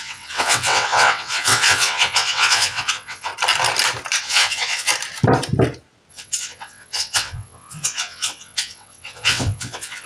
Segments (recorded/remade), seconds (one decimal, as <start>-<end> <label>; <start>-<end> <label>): 0.0-3.3 remade; 3.3-4.2 recorded; 4.2-4.9 remade; 4.9-6.1 recorded; 6.1-10.1 remade